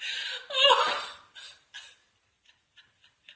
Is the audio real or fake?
real